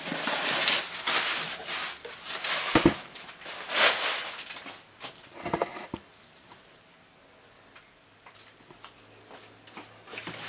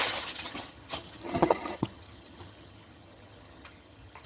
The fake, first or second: second